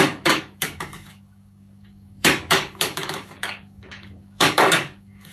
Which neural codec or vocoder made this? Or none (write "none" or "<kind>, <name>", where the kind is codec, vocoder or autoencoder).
codec, DAC